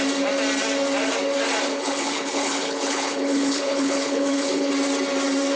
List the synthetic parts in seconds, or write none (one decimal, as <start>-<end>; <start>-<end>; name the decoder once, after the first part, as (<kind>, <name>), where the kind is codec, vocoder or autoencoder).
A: 1.7-4.7 (codec, HILCodec)